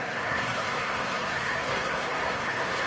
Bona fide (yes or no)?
no